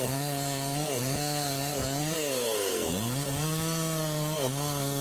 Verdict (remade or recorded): remade